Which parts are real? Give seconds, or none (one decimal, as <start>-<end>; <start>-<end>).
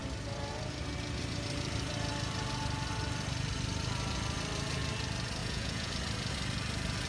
0.0-5.4; 5.9-7.1